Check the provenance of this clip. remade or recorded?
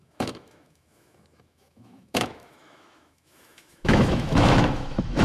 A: remade